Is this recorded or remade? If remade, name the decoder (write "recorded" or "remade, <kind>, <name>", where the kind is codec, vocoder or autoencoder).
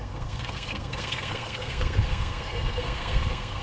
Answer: remade, codec, SNAC